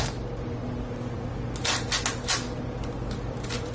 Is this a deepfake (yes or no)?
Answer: no